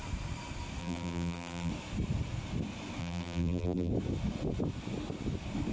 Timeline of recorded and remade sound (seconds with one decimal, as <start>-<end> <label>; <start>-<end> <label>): 0.0-0.8 recorded; 0.8-1.7 remade; 1.7-3.0 recorded; 3.0-3.9 remade; 3.9-5.7 recorded

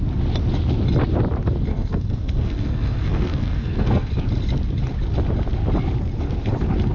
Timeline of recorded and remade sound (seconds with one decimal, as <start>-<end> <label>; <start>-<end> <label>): 0.0-1.7 recorded; 1.7-4.1 remade; 4.1-6.9 recorded